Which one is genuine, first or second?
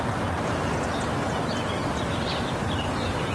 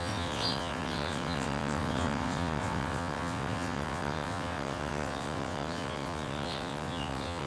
first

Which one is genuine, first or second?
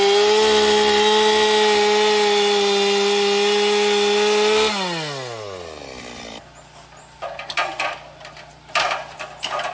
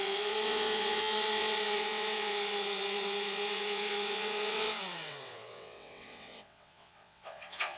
first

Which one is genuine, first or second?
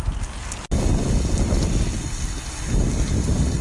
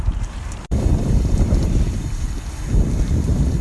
first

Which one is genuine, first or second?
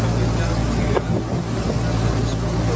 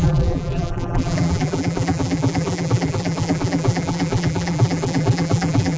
first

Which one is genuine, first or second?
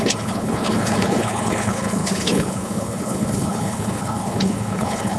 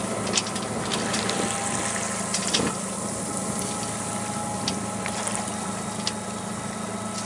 second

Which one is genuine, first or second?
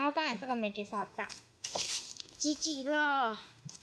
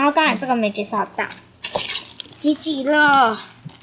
second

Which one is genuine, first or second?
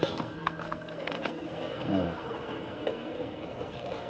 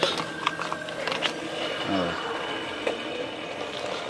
second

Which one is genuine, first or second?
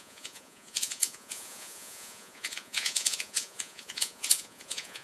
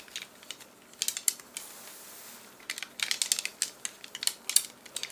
second